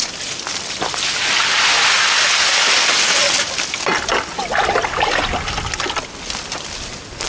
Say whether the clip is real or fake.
real